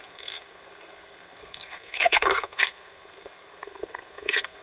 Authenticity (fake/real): fake